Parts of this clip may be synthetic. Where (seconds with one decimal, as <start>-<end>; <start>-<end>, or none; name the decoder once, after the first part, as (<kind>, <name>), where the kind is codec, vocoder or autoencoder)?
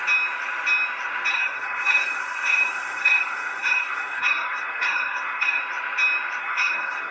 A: 1.3-5.6 (codec, SNAC); 6.4-7.1